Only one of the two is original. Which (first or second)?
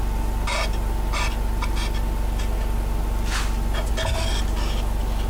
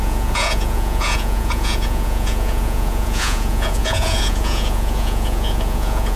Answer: first